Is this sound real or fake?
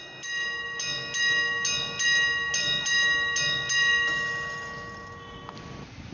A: real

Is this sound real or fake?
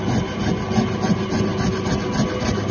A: real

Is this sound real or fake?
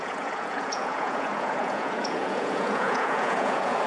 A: fake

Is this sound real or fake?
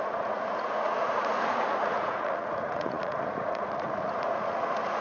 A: fake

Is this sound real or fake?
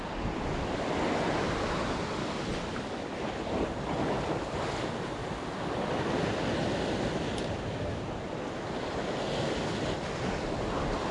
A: real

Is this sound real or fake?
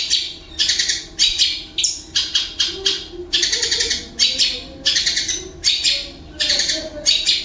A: real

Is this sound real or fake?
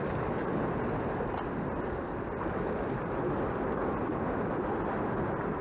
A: real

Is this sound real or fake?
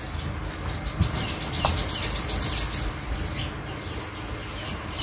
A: real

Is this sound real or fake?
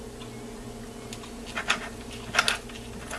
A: real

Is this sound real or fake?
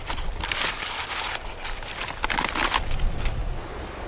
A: real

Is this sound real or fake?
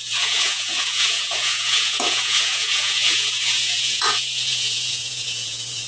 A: fake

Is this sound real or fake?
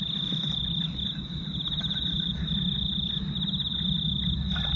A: real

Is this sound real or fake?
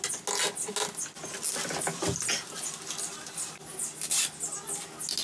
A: real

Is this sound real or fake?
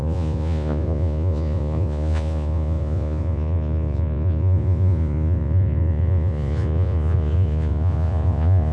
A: fake